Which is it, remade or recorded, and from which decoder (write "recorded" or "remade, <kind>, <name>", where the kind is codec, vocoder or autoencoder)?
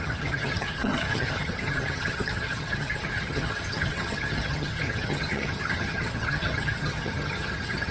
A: remade, vocoder, HiFi-GAN